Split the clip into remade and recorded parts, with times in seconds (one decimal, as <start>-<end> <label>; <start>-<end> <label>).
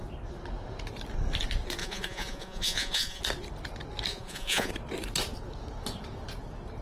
0.0-1.8 recorded; 1.8-3.2 remade; 3.2-4.1 recorded; 4.1-4.7 remade; 4.7-6.8 recorded